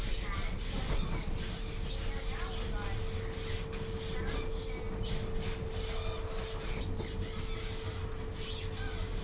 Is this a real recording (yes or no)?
yes